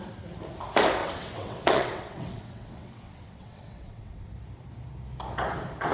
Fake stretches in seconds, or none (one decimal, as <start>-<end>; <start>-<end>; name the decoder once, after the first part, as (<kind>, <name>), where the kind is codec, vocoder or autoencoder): 1.0-4.3 (vocoder, WaveNeXt)